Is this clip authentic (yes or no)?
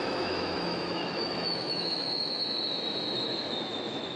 no